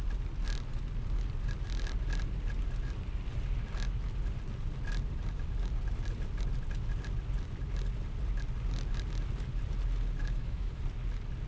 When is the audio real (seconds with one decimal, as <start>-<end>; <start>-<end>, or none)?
0.0-10.2; 10.8-11.5

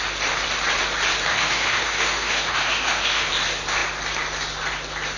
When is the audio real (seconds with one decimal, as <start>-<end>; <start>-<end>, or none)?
0.0-1.3; 3.3-5.2

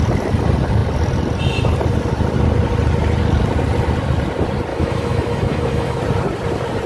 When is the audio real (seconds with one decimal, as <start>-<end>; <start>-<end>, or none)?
0.0-4.7; 6.0-6.9